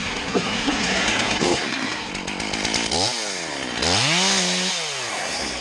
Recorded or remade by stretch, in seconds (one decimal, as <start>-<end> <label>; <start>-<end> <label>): 0.0-2.1 remade; 2.1-5.1 recorded; 5.1-5.6 remade